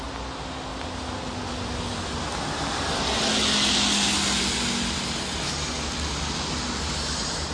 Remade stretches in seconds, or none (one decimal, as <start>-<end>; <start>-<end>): none